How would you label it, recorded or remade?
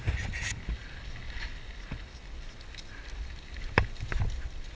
recorded